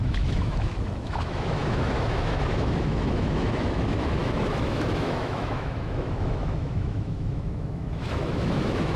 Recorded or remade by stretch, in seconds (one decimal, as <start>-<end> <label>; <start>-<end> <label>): 0.0-9.0 remade